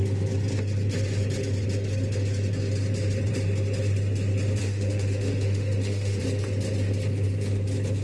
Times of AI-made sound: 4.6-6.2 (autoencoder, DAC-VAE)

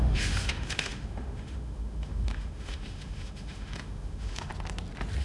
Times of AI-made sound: 0.0-4.5 (autoencoder, DAC-VAE)

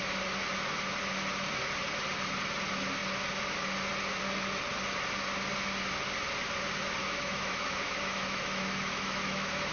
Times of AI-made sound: 7.0-9.7 (autoencoder, DAC-VAE)